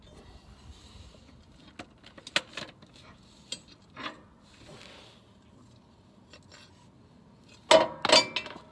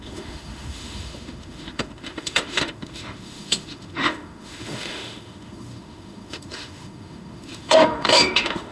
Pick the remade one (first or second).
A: second